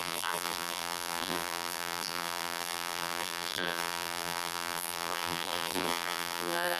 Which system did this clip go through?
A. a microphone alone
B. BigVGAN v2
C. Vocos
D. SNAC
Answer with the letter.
B